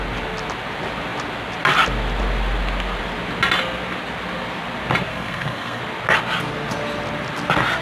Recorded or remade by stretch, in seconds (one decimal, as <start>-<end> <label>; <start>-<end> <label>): 0.0-5.1 recorded; 5.1-5.8 remade; 5.8-7.8 recorded